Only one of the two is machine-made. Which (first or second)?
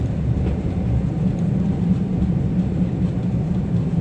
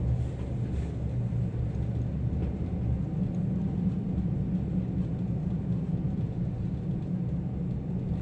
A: first